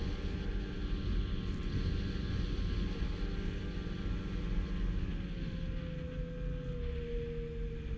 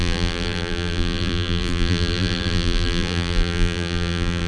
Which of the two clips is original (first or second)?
first